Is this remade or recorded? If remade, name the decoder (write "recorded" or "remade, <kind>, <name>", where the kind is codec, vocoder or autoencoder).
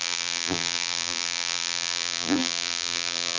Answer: remade, vocoder, BigVGAN v2